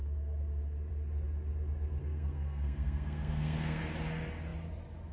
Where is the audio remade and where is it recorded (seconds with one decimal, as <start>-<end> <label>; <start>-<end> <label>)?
0.0-2.0 recorded; 2.0-3.8 remade; 3.8-5.1 recorded